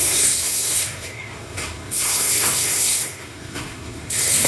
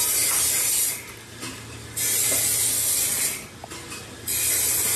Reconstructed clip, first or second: first